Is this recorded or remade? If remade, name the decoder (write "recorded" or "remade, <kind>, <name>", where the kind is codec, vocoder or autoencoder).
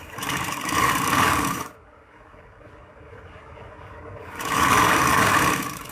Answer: remade, codec, DAC